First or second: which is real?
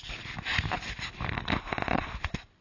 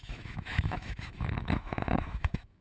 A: first